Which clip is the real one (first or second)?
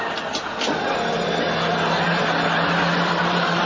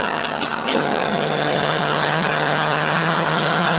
first